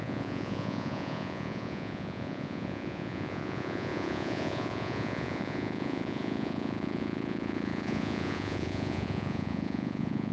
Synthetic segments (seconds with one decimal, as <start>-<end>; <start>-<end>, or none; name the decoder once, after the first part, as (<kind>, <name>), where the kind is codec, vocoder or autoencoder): 0.0-10.3 (vocoder, Vocos)